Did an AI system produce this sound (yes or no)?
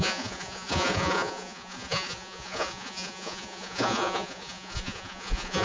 yes